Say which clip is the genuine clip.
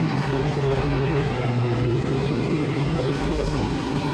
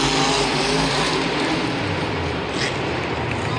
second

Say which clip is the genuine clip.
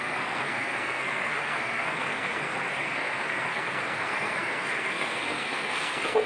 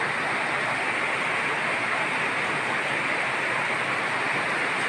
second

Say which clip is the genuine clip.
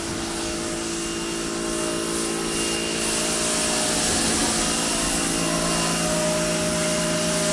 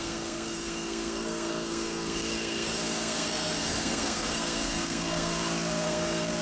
first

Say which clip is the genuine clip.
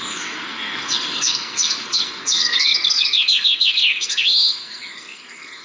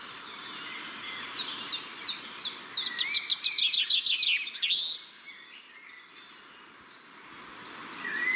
second